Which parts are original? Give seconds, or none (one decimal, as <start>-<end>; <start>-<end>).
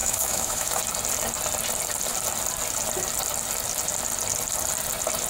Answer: 0.8-5.3